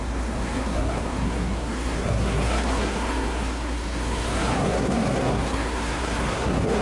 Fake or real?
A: fake